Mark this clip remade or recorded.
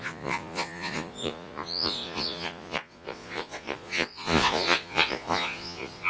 remade